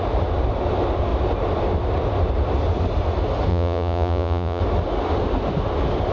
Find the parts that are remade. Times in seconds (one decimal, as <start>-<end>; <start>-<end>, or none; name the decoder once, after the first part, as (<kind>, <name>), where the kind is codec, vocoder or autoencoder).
3.5-4.6 (vocoder, Vocos)